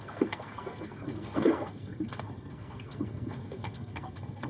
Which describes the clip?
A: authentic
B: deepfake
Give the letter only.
B